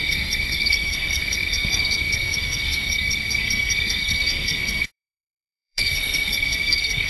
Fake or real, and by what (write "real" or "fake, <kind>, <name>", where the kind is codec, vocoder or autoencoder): fake, codec, SNAC